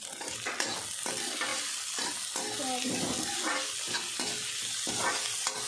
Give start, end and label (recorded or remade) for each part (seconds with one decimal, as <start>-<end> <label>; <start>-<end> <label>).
0.0-5.7 recorded